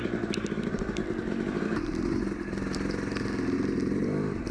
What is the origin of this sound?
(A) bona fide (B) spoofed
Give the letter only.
A